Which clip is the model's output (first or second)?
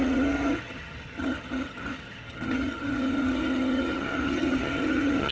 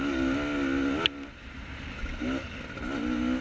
first